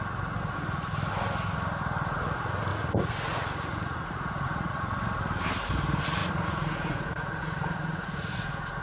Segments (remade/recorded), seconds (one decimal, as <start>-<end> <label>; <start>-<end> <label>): 0.0-2.7 recorded; 2.7-5.0 remade; 5.0-6.2 recorded; 6.2-8.8 remade